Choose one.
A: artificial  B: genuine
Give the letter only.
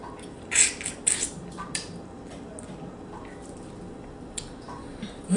B